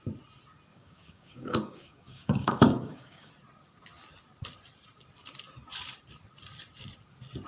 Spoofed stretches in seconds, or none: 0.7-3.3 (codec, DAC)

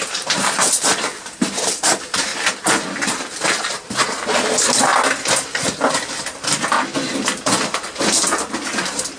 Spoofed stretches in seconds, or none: 0.0-2.3 (vocoder, BigVGAN v2); 3.6-4.9

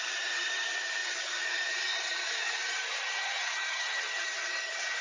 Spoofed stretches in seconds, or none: 0.0-5.0 (vocoder, HiFi-GAN)

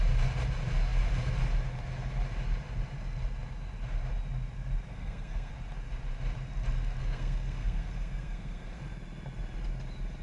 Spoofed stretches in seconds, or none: 4.9-5.5 (codec, SNAC); 7.0-8.8

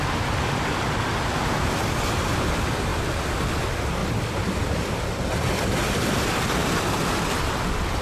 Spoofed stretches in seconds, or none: 4.0-4.9 (vocoder, BigVGAN v2)

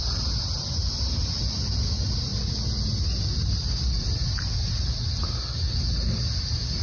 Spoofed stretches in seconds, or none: none